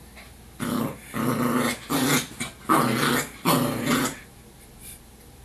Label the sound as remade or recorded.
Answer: recorded